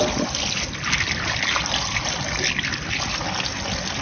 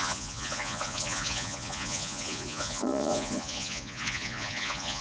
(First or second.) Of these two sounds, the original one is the first